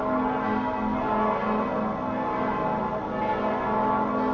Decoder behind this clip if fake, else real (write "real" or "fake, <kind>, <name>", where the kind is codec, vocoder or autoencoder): real